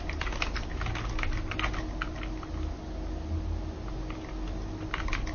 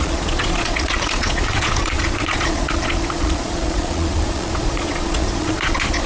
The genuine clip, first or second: first